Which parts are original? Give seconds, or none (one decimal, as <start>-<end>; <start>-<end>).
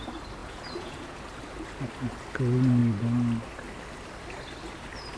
0.0-0.4; 1.2-5.2